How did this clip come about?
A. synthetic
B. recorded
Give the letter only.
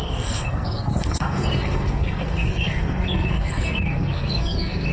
A